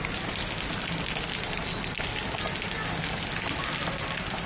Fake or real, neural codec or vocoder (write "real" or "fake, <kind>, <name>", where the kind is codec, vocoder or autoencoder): real